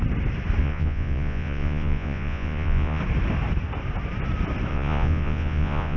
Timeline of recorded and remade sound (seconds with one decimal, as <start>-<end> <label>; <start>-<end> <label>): 0.0-0.6 recorded; 0.6-3.0 remade; 3.0-4.7 recorded; 4.7-6.0 remade